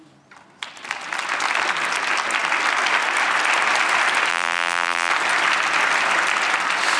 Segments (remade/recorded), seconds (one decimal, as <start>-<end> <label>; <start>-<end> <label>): 0.0-4.3 recorded; 4.3-5.1 remade; 5.1-7.0 recorded